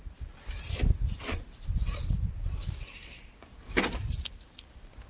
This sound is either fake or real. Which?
real